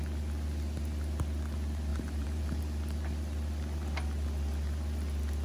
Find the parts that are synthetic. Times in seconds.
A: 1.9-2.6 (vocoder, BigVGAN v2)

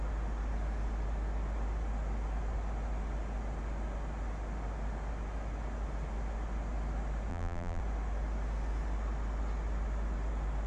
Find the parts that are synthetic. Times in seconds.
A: 7.3-7.8 (vocoder, BigVGAN v2)